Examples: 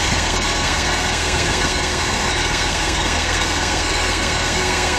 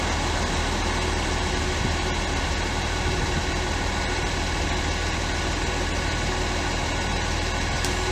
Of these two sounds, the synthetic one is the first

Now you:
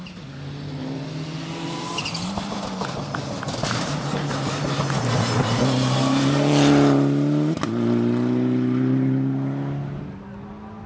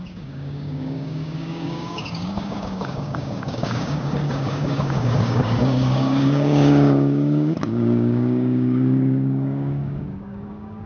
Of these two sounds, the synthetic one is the second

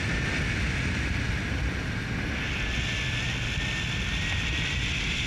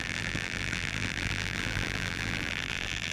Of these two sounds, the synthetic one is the second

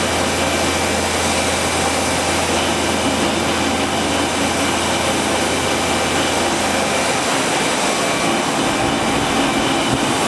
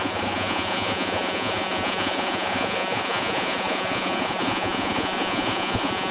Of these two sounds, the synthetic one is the second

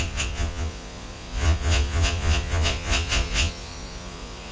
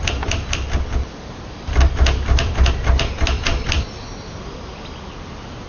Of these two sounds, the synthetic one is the first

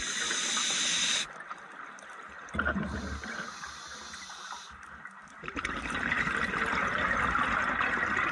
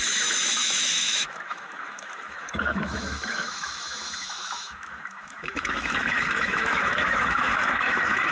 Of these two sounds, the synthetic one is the second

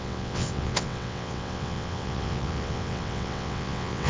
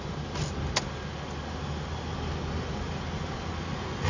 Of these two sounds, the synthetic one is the first